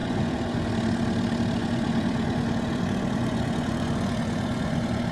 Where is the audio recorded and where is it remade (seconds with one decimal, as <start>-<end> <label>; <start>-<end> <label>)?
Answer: 0.0-0.7 remade; 0.7-1.6 recorded; 1.6-5.1 remade